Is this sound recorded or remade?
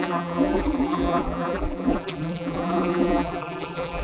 remade